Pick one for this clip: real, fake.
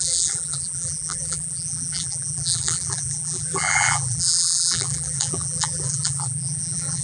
fake